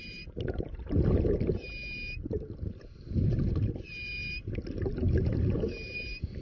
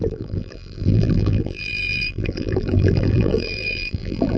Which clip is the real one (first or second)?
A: first